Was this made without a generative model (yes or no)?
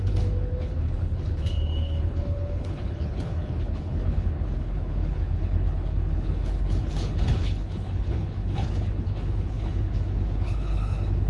no